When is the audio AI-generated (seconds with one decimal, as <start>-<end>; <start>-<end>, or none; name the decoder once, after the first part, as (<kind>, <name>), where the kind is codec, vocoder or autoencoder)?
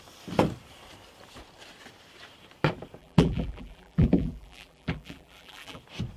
3.0-5.8 (vocoder, BigVGAN v2)